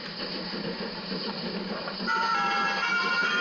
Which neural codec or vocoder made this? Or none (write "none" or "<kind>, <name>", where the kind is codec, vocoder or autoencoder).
vocoder, BigVGAN v2